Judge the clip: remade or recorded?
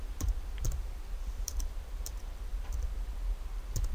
remade